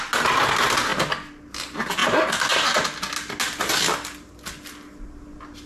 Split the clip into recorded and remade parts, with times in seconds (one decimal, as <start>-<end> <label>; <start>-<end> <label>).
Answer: 0.0-5.7 recorded

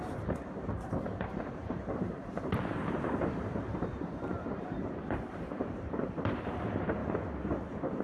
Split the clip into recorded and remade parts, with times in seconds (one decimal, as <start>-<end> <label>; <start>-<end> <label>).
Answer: 0.0-7.0 remade; 7.0-8.0 recorded